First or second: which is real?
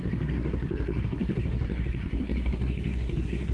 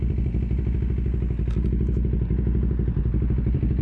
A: second